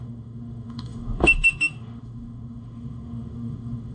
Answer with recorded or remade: remade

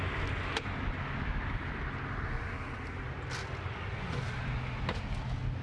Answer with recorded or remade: recorded